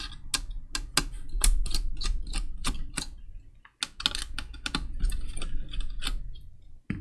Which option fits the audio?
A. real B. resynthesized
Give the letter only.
A